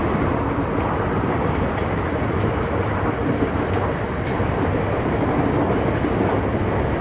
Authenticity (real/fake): real